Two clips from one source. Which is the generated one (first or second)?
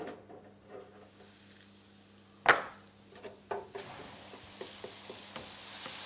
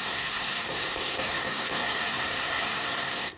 second